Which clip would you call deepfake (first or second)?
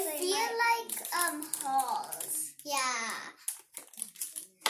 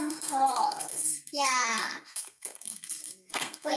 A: second